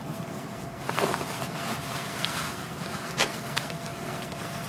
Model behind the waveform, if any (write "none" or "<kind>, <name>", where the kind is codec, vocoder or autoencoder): codec, SNAC